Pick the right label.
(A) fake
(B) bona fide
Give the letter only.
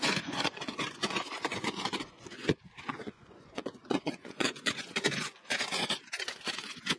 A